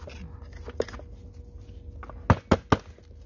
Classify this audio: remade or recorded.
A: recorded